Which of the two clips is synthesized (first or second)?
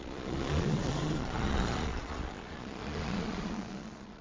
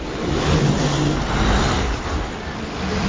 first